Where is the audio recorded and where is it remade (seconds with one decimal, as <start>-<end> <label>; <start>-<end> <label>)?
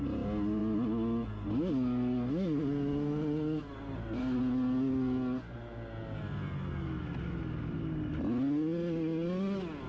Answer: 0.0-9.9 recorded